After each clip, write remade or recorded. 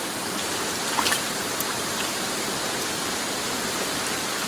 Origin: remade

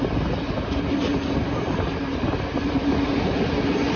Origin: recorded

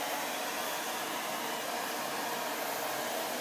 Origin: remade